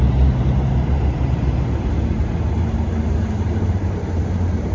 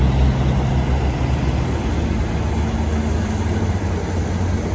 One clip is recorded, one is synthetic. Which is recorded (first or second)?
second